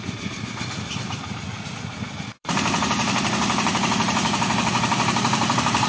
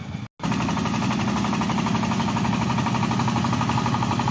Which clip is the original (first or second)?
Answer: second